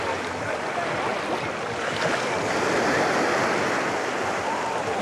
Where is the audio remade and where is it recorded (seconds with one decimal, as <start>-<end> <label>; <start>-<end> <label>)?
0.0-5.0 recorded